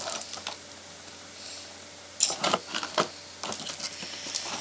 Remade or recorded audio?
recorded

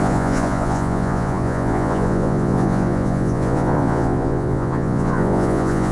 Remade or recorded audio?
remade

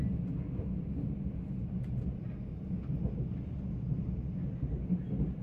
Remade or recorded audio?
recorded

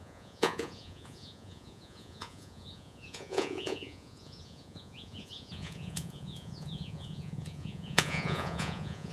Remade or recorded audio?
remade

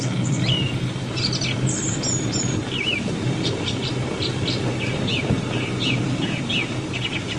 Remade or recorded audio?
recorded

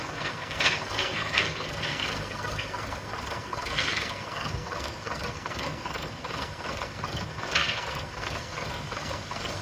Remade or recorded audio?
remade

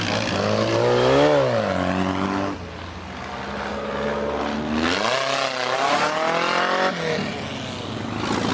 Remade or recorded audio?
recorded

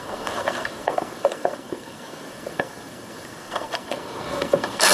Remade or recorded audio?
remade